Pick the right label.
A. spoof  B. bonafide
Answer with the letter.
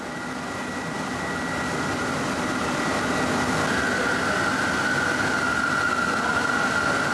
B